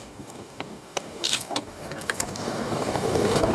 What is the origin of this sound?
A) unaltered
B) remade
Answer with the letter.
B